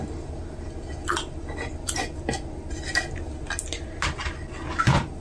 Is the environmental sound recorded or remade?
recorded